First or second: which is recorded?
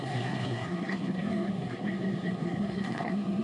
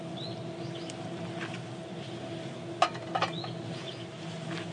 second